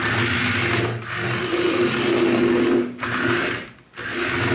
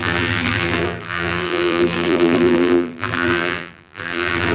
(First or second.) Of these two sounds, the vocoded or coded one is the second